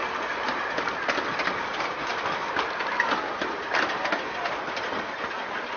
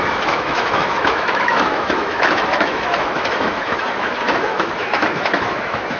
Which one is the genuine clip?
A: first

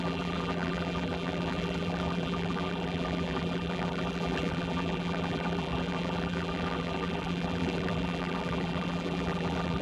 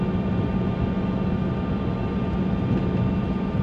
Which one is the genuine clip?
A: second